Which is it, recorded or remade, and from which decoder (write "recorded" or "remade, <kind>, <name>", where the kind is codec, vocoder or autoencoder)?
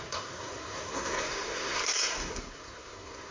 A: remade, codec, SNAC